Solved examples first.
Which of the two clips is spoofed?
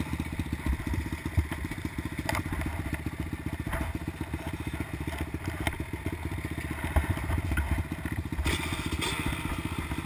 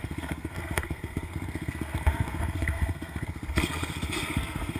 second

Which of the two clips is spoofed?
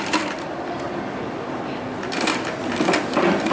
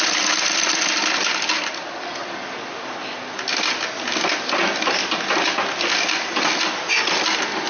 first